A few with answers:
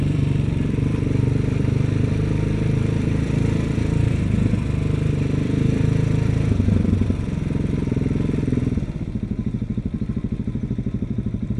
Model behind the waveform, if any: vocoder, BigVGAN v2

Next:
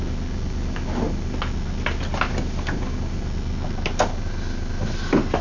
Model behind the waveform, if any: none